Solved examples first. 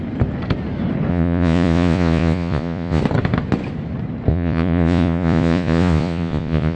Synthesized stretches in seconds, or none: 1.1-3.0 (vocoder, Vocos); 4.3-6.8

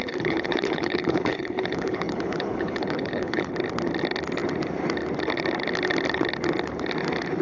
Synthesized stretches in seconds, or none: 0.0-3.5 (codec, HILCodec)

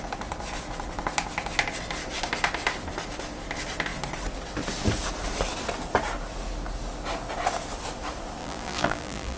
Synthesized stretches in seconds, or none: 8.4-9.4 (vocoder, BigVGAN v2)

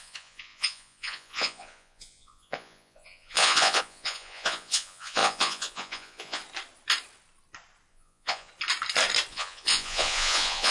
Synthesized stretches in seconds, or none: 0.0-6.4 (vocoder, Vocos); 7.9-8.5; 9.3-10.7

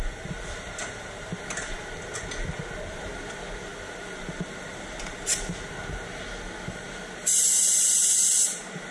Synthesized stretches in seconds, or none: none

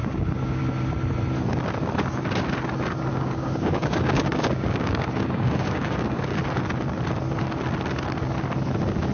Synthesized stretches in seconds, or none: 0.0-0.6 (codec, DAC); 3.1-6.4